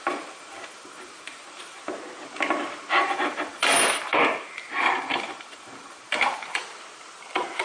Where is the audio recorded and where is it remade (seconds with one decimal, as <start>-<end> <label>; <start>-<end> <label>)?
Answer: 0.0-1.8 remade; 1.8-3.0 recorded; 3.0-6.6 remade; 6.6-7.6 recorded